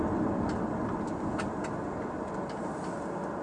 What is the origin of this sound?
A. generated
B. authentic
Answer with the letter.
B